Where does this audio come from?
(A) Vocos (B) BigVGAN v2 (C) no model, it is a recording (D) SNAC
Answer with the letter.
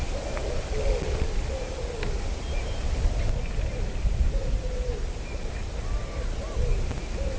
C